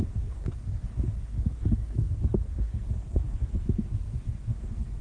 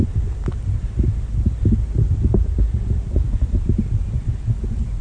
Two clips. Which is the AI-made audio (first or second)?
first